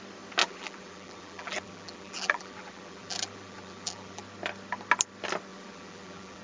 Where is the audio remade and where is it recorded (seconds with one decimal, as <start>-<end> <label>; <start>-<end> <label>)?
0.0-0.4 recorded; 0.4-4.2 remade; 4.2-5.5 recorded; 5.5-6.4 remade

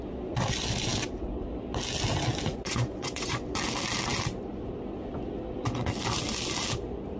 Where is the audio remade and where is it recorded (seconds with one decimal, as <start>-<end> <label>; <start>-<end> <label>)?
0.0-2.5 recorded; 2.5-3.3 remade; 3.3-7.2 recorded

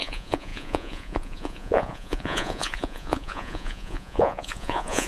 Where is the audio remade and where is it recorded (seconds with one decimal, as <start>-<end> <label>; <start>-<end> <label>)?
0.0-5.1 remade

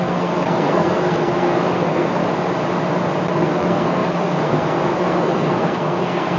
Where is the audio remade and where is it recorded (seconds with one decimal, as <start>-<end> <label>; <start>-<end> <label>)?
0.0-2.2 remade; 2.2-3.3 recorded; 3.3-6.4 remade

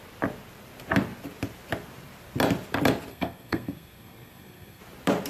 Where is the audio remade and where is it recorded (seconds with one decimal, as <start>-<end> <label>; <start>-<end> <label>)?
0.0-3.1 recorded; 3.1-4.8 remade; 4.8-5.3 recorded

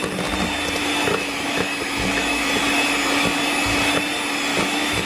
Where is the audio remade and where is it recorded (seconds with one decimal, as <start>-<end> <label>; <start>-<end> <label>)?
0.0-0.8 recorded; 0.8-2.5 remade; 2.5-4.5 recorded; 4.5-5.1 remade